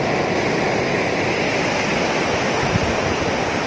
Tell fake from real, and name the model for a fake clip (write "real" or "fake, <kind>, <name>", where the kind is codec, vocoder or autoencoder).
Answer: real